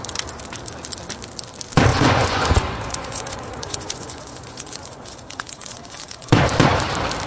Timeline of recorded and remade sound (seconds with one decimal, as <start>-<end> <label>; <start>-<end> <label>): 0.0-1.9 recorded; 1.9-6.3 remade; 6.3-7.3 recorded